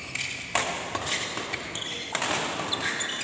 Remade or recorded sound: recorded